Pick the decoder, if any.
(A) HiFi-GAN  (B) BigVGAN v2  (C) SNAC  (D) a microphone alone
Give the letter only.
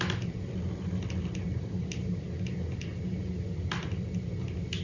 D